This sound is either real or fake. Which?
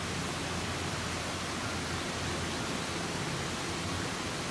real